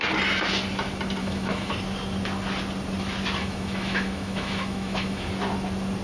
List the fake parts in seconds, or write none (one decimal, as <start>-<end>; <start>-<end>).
1.2-1.7; 3.4-5.3